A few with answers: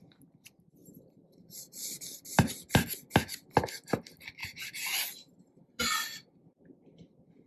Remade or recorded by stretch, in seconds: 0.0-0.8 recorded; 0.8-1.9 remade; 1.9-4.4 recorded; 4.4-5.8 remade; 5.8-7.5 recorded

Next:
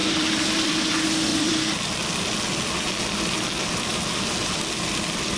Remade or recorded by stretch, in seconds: 0.0-0.9 remade; 0.9-1.3 recorded; 1.3-2.1 remade; 2.1-3.9 recorded; 3.9-5.0 remade; 5.0-5.4 recorded

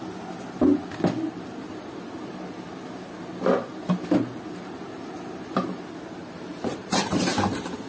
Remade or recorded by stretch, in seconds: 0.0-6.2 recorded; 6.2-7.2 remade; 7.2-7.9 recorded

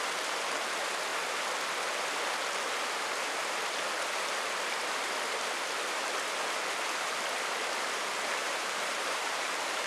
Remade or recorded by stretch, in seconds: 0.0-8.4 recorded; 8.4-9.9 remade